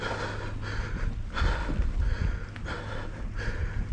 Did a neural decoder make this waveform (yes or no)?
no